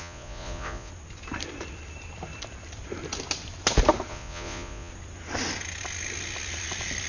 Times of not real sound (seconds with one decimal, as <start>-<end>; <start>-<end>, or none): 0.0-0.9; 4.1-4.9